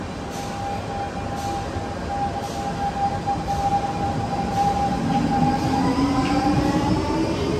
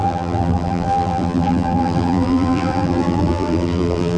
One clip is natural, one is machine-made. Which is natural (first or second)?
first